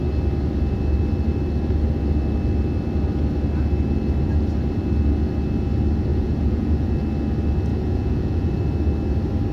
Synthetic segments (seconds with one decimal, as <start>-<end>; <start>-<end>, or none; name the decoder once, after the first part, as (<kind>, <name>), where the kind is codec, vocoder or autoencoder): 6.1-6.9 (vocoder, Vocos); 7.7-8.5